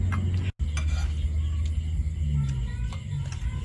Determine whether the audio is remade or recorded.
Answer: recorded